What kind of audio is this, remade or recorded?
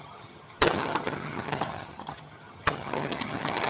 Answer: remade